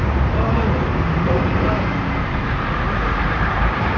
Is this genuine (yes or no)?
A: no